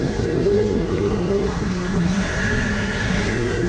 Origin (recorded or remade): remade